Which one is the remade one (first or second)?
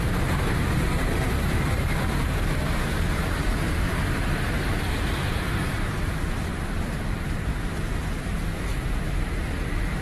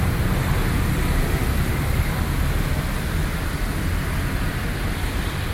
first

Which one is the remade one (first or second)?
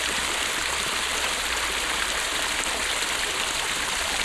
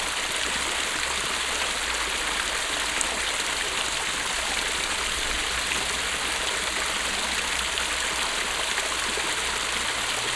first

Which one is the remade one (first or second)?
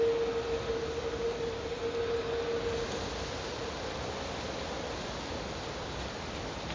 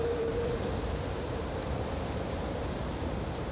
second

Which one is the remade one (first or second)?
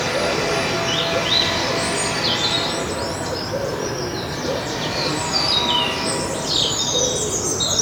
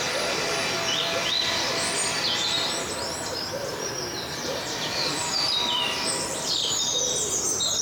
second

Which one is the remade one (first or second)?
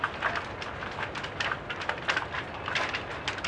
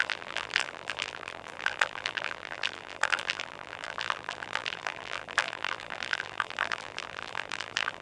second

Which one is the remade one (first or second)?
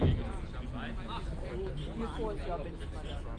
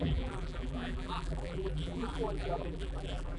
second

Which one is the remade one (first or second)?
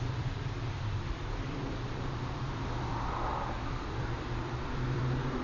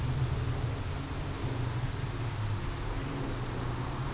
first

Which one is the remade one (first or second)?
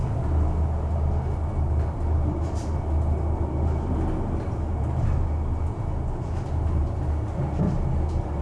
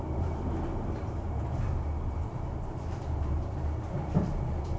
second